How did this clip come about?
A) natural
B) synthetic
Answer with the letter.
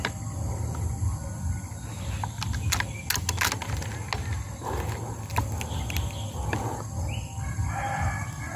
A